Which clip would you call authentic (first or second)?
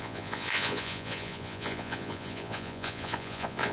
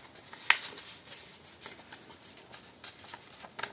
second